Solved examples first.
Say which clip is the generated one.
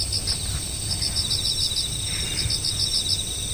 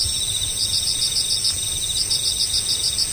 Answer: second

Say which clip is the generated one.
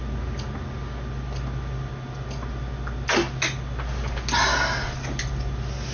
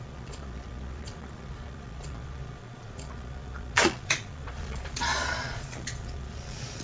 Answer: second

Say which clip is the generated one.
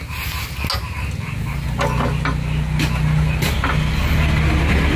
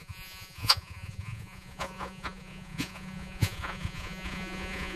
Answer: second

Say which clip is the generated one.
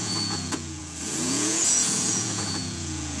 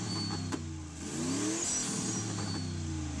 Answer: first